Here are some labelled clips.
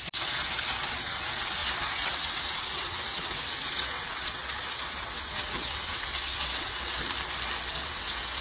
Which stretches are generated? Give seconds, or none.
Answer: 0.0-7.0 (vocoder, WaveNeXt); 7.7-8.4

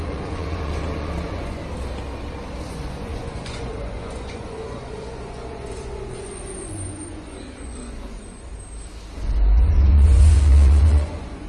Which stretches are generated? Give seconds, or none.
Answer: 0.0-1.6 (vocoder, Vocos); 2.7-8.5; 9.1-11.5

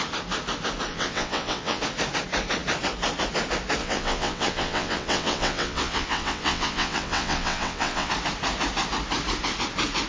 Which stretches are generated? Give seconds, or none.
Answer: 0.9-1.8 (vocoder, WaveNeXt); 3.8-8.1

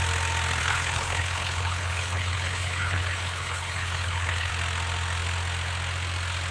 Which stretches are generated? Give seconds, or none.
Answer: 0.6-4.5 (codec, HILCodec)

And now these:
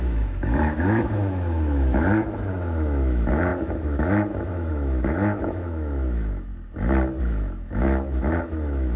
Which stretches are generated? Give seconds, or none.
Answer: 0.0-6.5 (autoencoder, DAC-VAE); 7.2-9.0